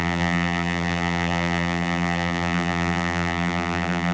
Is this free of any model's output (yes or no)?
no